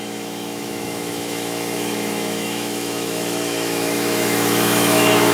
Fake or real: fake